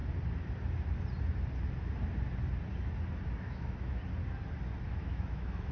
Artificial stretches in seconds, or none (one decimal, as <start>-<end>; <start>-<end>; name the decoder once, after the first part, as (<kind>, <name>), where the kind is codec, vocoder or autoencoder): 3.4-4.0 (autoencoder, DAC-VAE); 4.9-5.7